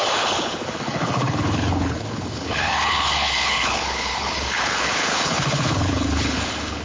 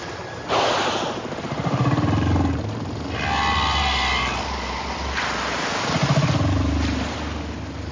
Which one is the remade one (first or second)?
first